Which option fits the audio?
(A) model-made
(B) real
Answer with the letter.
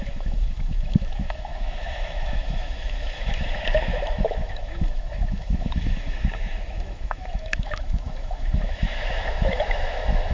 A